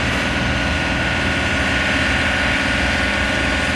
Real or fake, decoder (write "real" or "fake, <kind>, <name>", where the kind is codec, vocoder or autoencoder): real